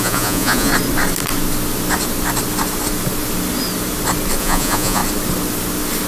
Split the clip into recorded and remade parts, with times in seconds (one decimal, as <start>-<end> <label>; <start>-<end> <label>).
0.0-0.7 remade; 0.7-4.4 recorded; 4.4-5.0 remade; 5.0-6.1 recorded